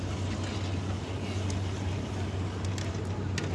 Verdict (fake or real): real